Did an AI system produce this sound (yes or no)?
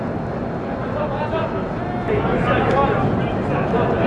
no